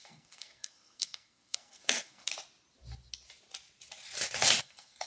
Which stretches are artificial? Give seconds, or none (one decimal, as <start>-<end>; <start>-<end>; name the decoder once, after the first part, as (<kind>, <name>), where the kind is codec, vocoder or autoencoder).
0.0-2.3 (codec, SNAC); 4.6-5.1